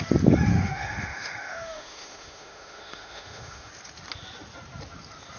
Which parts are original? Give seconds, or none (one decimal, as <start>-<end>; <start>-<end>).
0.0-0.5; 3.7-5.4

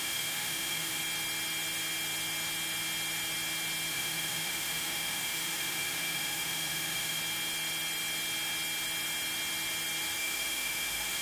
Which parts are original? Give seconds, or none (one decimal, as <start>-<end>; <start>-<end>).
1.0-3.9; 7.2-10.2